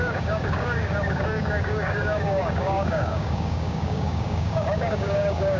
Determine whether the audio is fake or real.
fake